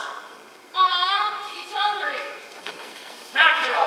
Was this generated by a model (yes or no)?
yes